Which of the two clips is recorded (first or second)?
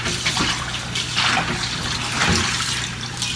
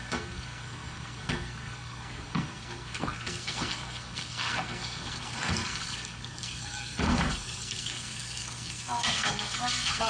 first